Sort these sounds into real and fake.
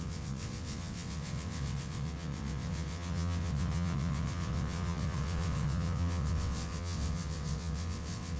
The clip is fake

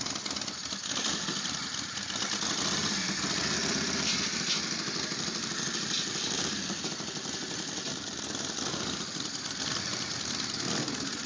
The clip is real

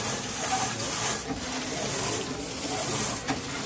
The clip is real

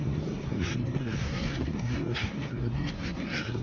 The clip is fake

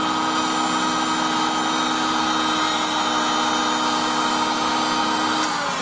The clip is real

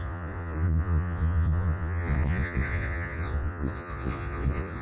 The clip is fake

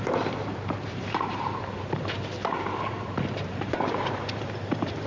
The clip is fake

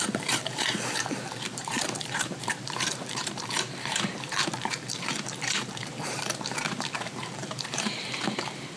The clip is fake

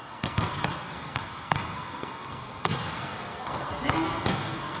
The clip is fake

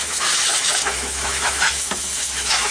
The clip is fake